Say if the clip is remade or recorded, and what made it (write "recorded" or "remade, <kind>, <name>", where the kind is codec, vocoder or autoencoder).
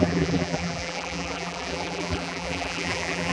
remade, vocoder, BigVGAN v2